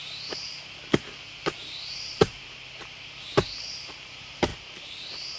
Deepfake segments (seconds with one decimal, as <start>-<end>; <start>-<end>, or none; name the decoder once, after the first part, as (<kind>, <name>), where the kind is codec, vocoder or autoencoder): 1.6-2.3 (vocoder, BigVGAN v2); 3.6-4.5